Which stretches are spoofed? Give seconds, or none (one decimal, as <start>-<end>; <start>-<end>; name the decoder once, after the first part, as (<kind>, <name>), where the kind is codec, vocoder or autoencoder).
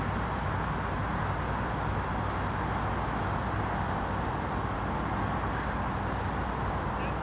none